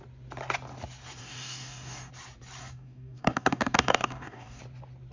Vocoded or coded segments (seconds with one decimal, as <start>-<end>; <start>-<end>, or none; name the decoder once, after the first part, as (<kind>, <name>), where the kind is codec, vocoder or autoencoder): 1.2-2.1 (codec, DAC); 2.6-4.6